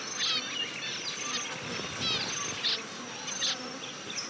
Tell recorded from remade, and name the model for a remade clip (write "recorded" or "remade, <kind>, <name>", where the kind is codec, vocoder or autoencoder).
recorded